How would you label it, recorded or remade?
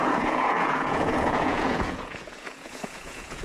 remade